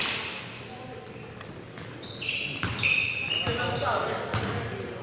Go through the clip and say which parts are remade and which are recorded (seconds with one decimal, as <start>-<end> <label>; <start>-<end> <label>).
0.0-5.0 recorded